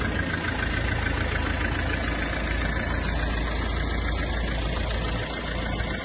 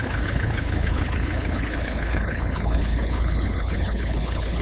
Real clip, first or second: first